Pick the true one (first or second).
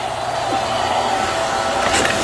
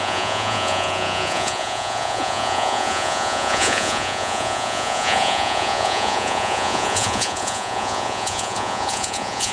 first